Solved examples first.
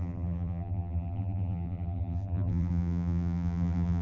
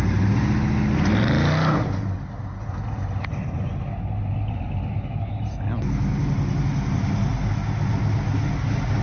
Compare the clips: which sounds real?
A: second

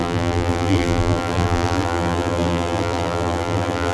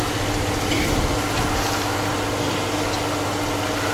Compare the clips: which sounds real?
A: second